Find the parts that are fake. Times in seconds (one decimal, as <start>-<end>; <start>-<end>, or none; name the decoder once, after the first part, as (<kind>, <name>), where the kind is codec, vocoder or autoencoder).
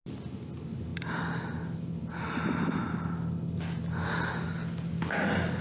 none